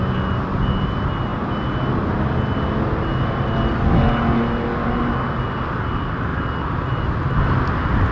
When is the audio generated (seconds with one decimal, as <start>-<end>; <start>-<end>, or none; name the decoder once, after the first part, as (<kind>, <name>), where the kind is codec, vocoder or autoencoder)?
none